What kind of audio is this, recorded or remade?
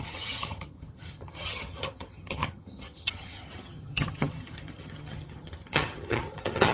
remade